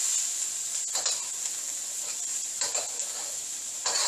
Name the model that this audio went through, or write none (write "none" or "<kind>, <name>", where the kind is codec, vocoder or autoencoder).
none